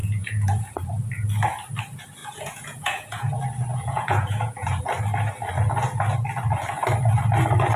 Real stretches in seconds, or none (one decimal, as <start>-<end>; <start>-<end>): 0.7-2.2; 3.3-3.7; 4.8-7.8